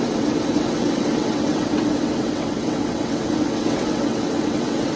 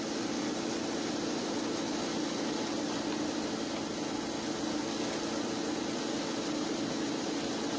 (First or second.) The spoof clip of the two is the first